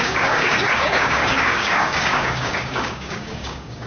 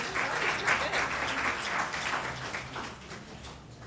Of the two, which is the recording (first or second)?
second